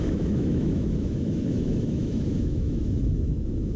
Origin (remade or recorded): remade